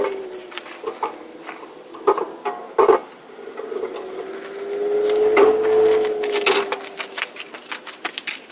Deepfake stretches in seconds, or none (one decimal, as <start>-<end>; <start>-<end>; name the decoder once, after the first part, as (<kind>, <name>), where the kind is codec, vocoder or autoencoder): 0.0-2.6 (vocoder, BigVGAN v2); 7.5-8.5